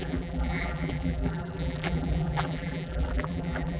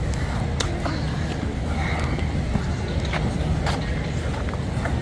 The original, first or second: second